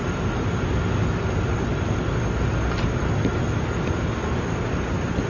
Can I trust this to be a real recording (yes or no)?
yes